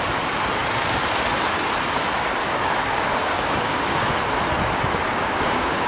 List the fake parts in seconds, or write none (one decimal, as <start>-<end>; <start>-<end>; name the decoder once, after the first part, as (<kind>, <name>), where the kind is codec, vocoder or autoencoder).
2.4-4.1 (codec, DAC); 5.1-5.9